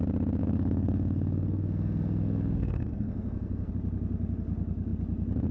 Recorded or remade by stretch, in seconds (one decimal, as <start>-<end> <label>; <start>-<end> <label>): 0.0-0.4 recorded; 0.4-3.7 remade; 3.7-5.5 recorded

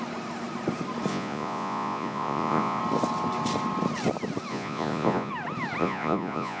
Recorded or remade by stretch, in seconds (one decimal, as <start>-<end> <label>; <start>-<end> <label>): 0.0-1.1 recorded; 1.1-2.8 remade; 2.8-4.5 recorded; 4.5-5.3 remade; 5.3-5.8 recorded; 5.8-6.6 remade

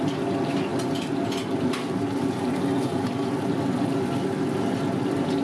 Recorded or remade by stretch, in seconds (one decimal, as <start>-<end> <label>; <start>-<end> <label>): 0.0-5.4 recorded

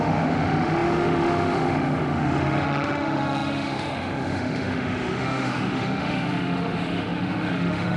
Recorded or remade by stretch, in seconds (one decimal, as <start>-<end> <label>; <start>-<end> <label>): 0.0-8.0 remade

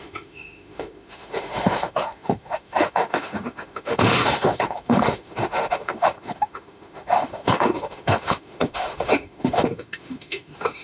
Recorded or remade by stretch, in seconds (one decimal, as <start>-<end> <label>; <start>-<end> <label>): 0.0-10.8 remade

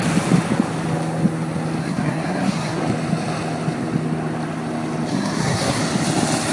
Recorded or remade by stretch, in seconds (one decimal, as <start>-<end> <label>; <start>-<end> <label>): 0.0-1.8 recorded; 1.8-2.8 remade; 2.8-5.1 recorded; 5.1-5.8 remade; 5.8-6.5 recorded

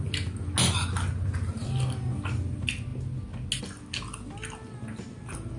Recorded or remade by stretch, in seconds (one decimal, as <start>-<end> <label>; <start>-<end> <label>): 0.0-5.6 recorded